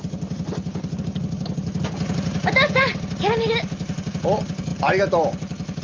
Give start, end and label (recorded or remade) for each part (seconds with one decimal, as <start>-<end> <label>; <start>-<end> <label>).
0.0-5.8 recorded